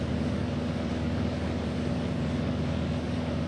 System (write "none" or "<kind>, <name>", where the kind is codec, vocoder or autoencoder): codec, DAC